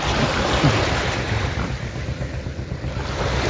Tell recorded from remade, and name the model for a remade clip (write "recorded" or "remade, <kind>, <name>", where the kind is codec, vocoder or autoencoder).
recorded